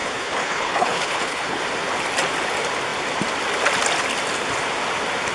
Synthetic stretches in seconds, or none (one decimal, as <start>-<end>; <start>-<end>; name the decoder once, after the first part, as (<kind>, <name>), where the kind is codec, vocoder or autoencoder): 0.0-1.6 (codec, HILCodec)